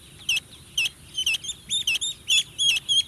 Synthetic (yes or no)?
no